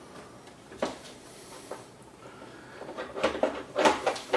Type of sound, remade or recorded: remade